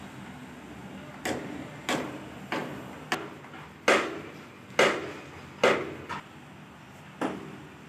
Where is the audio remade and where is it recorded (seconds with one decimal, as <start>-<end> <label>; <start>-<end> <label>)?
0.0-7.9 recorded